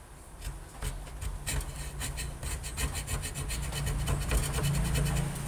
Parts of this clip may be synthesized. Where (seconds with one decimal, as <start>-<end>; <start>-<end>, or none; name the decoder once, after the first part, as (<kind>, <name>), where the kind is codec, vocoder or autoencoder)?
none